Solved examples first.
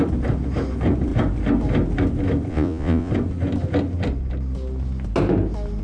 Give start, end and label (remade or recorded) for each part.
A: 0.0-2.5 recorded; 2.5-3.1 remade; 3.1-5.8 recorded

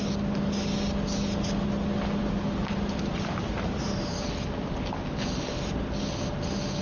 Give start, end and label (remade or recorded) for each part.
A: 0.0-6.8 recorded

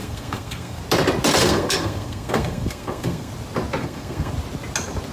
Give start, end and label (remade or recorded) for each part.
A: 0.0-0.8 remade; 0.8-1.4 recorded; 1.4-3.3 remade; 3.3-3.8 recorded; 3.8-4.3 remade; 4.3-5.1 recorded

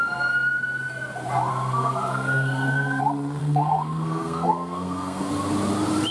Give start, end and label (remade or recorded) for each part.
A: 0.0-1.5 recorded; 1.5-3.0 remade; 3.0-3.4 recorded; 3.4-5.3 remade; 5.3-6.1 recorded

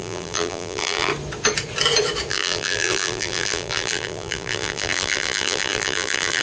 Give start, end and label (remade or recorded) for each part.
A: 0.0-1.1 remade; 1.1-2.3 recorded; 2.3-6.4 remade

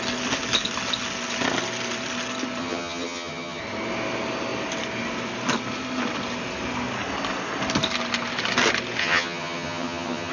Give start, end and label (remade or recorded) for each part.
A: 0.0-2.6 recorded; 2.6-3.6 remade; 3.6-9.0 recorded; 9.0-10.3 remade